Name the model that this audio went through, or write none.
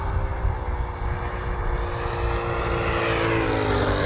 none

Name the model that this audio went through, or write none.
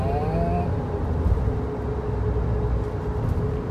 none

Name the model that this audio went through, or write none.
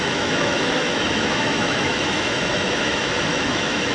autoencoder, DAC-VAE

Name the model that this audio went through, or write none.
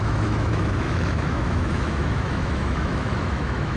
autoencoder, DAC-VAE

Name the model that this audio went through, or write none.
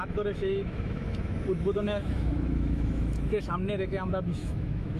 autoencoder, DAC-VAE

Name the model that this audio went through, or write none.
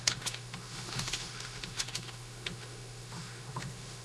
autoencoder, DAC-VAE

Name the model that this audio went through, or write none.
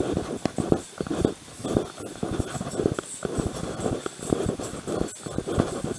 none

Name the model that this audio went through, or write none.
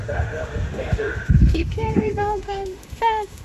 autoencoder, DAC-VAE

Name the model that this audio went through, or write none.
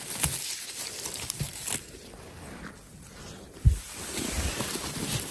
none